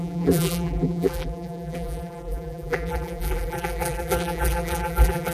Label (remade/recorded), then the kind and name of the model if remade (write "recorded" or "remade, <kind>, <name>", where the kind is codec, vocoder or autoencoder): remade, vocoder, BigVGAN v2